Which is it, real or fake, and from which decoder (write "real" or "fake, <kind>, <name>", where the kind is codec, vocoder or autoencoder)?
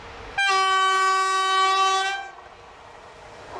real